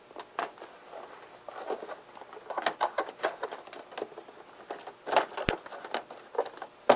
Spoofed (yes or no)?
no